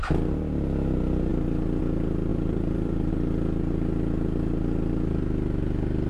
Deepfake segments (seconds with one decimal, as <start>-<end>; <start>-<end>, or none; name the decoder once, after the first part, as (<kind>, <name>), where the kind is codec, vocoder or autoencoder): 2.3-3.1 (vocoder, BigVGAN v2)